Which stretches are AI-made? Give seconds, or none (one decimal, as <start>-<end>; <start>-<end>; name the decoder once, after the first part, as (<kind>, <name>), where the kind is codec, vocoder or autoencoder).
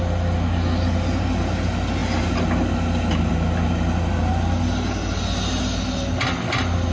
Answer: none